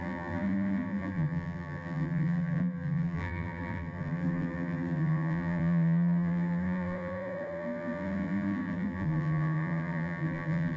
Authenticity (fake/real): fake